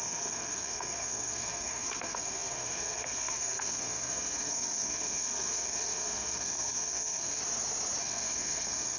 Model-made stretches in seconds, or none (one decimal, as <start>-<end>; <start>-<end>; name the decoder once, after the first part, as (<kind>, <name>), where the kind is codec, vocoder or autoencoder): 0.0-7.4 (codec, SNAC); 8.0-9.0

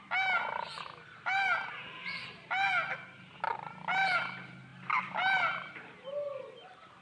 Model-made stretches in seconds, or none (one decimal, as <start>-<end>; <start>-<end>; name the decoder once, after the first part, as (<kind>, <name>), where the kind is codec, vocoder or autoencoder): none

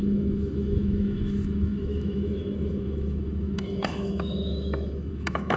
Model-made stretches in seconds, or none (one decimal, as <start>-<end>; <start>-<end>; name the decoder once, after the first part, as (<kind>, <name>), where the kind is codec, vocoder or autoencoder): 0.0-5.6 (autoencoder, DAC-VAE)

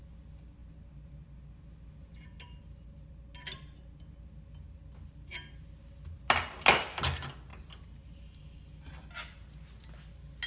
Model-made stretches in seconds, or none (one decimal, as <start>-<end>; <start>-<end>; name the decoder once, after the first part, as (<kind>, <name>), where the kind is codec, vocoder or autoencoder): none

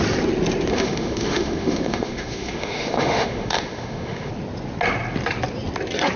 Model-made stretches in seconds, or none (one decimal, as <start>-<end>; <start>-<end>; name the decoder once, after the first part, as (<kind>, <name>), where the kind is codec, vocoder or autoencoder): 0.7-4.3 (autoencoder, DAC-VAE)

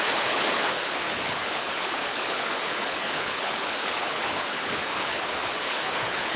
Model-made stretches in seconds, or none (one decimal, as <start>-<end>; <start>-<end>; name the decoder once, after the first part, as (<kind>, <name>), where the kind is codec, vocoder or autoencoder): 0.0-6.4 (codec, HILCodec)

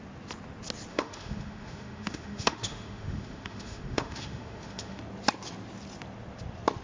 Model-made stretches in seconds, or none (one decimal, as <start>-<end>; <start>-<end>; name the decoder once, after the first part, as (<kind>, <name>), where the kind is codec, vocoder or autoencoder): 0.9-5.0 (autoencoder, DAC-VAE)

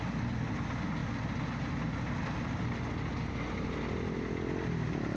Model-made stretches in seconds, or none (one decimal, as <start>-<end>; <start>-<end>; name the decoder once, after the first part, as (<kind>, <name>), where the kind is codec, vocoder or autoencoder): none